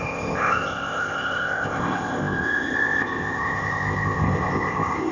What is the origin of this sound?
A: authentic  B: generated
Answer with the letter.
B